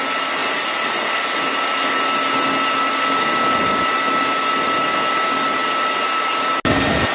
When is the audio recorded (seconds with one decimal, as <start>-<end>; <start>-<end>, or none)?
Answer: 0.0-7.1